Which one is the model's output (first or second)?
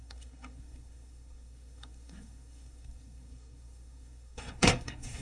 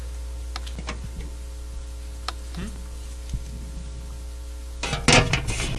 first